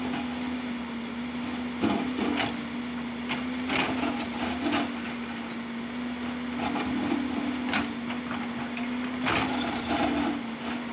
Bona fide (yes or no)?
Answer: yes